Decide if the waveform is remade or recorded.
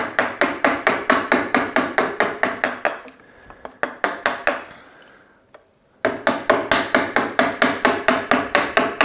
recorded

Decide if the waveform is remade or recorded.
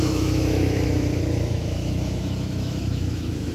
remade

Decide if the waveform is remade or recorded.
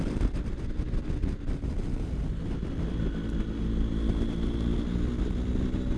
recorded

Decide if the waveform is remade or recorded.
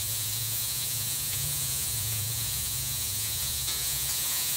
remade